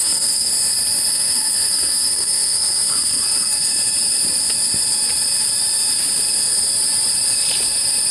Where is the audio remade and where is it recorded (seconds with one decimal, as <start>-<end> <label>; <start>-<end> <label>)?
0.0-0.5 remade; 0.5-1.1 recorded; 1.1-3.7 remade; 3.7-8.1 recorded